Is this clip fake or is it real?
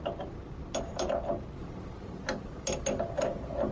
real